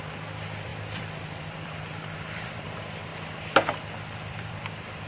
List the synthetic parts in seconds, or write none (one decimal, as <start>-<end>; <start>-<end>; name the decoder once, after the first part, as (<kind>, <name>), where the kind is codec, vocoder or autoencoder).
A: 0.0-5.1 (vocoder, BigVGAN v2)